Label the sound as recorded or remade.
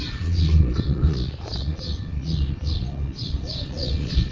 remade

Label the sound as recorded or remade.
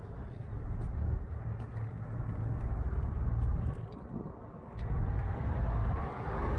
recorded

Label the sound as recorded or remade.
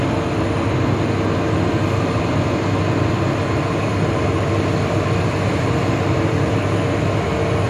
recorded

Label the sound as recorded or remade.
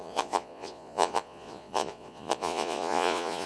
remade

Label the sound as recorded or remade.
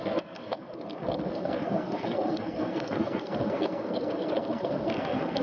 remade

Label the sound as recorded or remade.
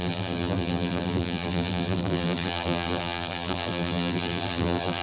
remade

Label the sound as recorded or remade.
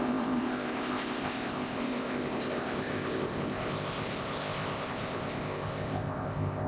remade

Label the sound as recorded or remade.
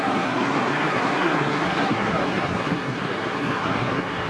remade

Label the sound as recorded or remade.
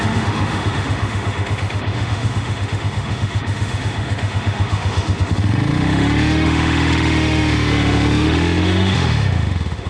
remade